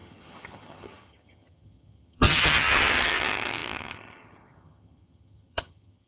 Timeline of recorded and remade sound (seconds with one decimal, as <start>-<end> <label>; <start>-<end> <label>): 0.0-6.1 remade

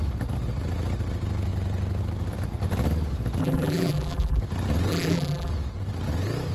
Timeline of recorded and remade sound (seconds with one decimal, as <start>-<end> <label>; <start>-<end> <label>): 0.0-3.4 recorded; 3.4-4.4 remade; 4.4-4.9 recorded; 4.9-5.5 remade; 5.5-6.5 recorded

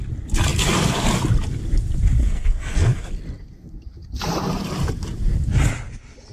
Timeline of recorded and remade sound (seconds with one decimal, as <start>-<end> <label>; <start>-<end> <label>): 0.0-2.2 recorded; 2.2-3.1 remade; 3.1-6.3 recorded

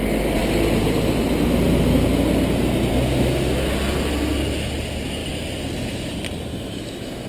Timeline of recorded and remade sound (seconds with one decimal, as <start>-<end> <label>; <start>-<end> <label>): 0.0-6.5 recorded; 6.5-7.3 remade

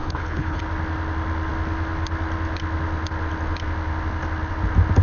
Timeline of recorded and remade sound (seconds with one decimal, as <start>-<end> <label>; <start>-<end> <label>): 0.0-0.6 remade; 0.6-5.0 recorded

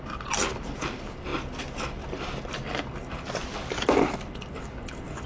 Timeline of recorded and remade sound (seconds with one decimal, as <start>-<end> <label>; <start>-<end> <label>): 0.0-5.3 recorded

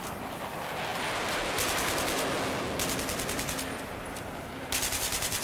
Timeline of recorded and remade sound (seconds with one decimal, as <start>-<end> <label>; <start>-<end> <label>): 0.0-5.4 recorded